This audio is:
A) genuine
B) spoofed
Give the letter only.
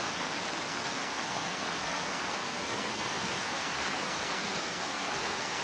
B